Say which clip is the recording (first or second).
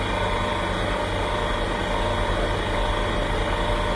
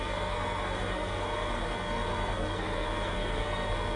first